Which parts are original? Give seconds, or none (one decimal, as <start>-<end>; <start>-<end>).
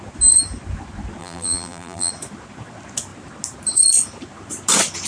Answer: 0.0-1.2; 2.1-5.1